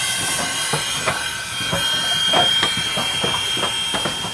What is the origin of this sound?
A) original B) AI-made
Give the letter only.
A